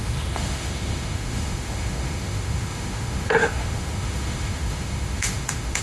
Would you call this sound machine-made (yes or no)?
yes